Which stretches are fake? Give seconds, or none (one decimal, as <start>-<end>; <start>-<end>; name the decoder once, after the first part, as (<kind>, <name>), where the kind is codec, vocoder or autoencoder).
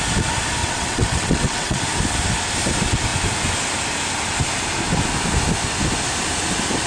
0.6-1.8 (vocoder, WaveNeXt)